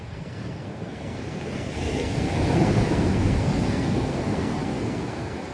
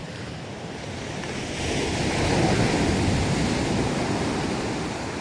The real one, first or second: second